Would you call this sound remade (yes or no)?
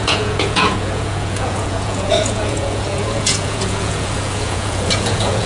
yes